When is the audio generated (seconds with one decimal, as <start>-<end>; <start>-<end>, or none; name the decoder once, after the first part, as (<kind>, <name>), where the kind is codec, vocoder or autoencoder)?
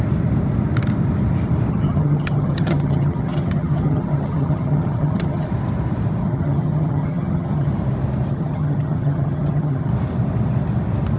1.7-5.5 (vocoder, HiFi-GAN); 6.2-7.7; 8.3-9.9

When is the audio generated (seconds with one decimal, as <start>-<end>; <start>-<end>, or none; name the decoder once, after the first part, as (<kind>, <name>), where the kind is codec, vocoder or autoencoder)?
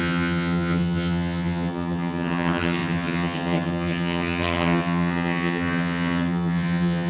0.0-7.1 (vocoder, HiFi-GAN)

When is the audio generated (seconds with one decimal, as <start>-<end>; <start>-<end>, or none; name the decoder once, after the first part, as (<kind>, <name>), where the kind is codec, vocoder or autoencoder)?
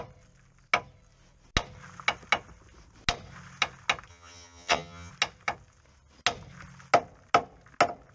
4.1-5.1 (vocoder, HiFi-GAN)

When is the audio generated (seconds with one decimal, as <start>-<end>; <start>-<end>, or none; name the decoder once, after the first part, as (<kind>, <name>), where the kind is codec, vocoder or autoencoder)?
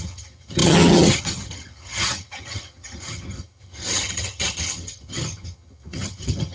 0.0-6.5 (vocoder, HiFi-GAN)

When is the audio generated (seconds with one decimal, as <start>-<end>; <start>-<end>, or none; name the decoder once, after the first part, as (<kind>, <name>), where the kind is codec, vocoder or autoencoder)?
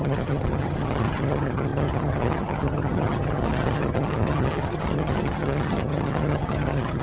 0.0-7.0 (vocoder, HiFi-GAN)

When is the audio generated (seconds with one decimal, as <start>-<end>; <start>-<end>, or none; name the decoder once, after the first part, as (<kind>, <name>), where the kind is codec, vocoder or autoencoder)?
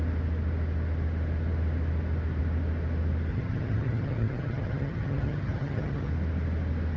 3.3-6.1 (vocoder, HiFi-GAN)